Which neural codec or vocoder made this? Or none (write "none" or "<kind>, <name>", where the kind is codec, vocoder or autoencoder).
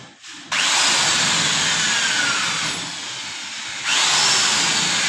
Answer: none